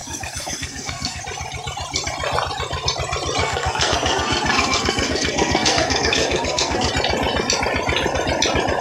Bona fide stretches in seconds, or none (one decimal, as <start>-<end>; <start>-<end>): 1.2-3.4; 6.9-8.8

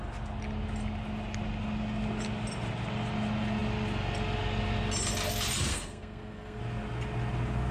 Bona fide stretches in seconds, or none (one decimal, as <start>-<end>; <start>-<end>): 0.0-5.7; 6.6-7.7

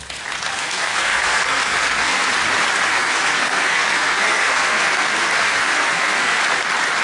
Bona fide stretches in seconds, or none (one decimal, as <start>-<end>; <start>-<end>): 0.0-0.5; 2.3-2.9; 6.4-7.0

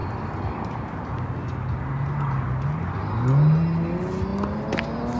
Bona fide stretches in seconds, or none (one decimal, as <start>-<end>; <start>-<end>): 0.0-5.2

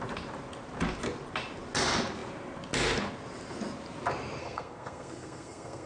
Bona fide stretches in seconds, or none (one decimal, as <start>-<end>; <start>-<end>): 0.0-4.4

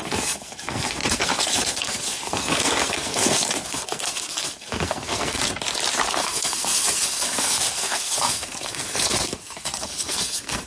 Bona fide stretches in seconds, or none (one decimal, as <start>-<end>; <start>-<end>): 5.4-6.1

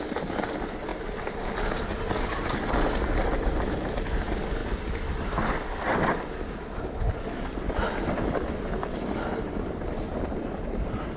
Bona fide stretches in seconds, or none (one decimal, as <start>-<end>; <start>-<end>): 0.0-11.2